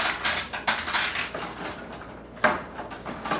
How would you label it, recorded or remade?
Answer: recorded